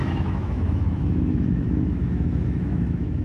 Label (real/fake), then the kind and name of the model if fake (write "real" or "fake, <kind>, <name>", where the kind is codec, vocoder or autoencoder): fake, autoencoder, DAC-VAE